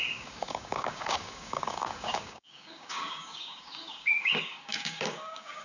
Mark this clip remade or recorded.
remade